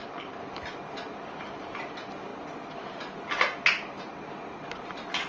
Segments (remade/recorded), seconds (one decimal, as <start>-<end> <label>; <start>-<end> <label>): 0.0-5.3 recorded